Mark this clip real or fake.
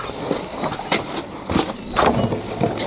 real